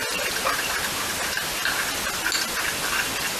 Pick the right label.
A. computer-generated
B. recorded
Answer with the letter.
B